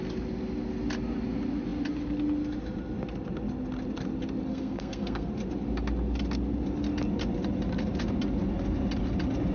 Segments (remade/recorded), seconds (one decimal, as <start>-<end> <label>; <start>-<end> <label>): 0.0-4.5 recorded; 4.5-5.3 remade; 5.3-9.5 recorded